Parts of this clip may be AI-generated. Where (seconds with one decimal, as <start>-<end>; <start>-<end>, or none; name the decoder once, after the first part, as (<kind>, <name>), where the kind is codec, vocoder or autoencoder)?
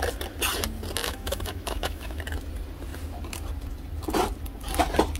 1.0-2.2 (autoencoder, DAC-VAE)